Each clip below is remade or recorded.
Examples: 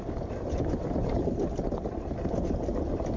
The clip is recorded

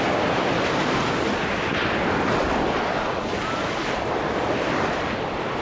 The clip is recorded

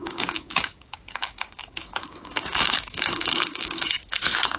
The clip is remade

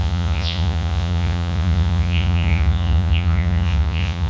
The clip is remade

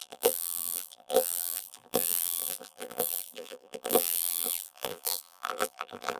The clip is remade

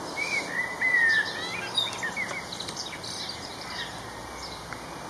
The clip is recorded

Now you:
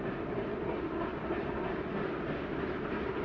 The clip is recorded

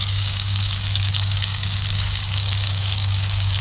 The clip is remade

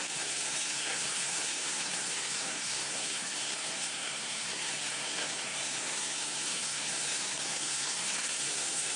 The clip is remade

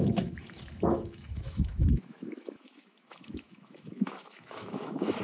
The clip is remade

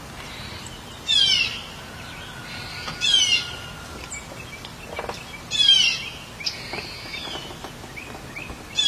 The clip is recorded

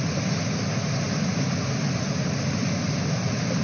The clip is recorded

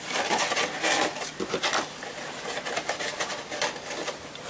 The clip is recorded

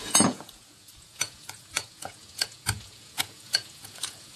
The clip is remade